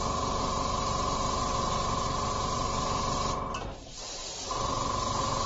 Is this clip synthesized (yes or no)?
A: yes